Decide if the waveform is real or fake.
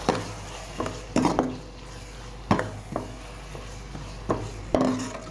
real